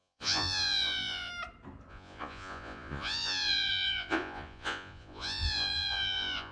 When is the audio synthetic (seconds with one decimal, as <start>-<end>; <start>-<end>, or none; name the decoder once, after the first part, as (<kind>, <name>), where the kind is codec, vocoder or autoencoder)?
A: 0.0-1.3 (vocoder, Vocos); 1.9-6.5